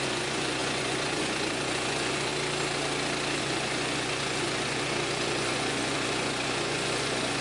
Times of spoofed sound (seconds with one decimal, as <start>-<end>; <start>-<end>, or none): 0.0-2.3; 3.4-7.4